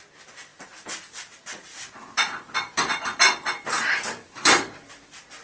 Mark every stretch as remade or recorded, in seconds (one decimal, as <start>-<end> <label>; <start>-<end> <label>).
0.0-1.7 recorded; 1.7-4.9 remade; 4.9-5.4 recorded

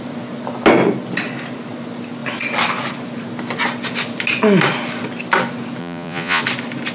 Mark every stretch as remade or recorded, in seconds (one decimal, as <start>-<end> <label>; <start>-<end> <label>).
0.0-5.8 recorded; 5.8-6.4 remade; 6.4-6.9 recorded

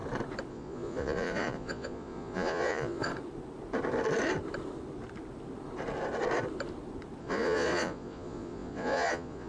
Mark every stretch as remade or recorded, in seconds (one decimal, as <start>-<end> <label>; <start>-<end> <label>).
0.0-0.5 recorded; 0.5-3.1 remade; 3.1-7.2 recorded; 7.2-9.5 remade

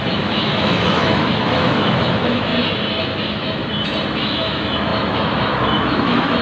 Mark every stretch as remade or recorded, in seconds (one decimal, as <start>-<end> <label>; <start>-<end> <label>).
0.0-2.5 remade; 2.5-3.0 recorded; 3.0-3.6 remade; 3.6-4.2 recorded; 4.2-6.4 remade

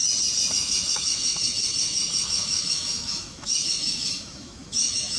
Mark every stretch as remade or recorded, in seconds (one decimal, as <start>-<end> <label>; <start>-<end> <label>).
0.0-0.5 recorded; 0.5-5.2 remade